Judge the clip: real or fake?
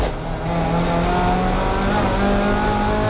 real